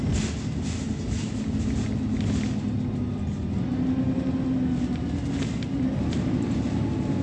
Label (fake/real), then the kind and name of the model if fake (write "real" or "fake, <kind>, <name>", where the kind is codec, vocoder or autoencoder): real